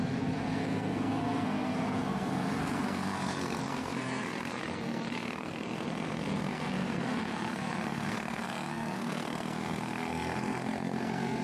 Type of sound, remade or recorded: remade